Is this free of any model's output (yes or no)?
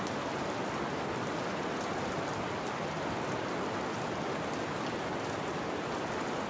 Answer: yes